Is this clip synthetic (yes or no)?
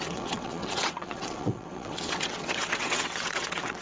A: yes